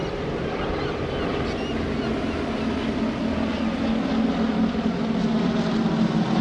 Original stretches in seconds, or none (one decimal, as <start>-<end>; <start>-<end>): 0.0-6.4